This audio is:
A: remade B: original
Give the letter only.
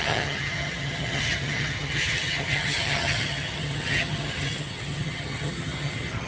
A